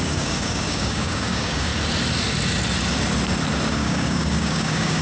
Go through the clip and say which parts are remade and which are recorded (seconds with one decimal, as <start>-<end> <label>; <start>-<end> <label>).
0.0-1.7 remade; 1.7-3.7 recorded; 3.7-5.0 remade